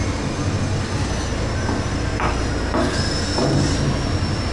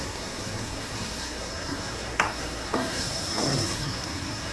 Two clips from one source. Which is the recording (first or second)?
first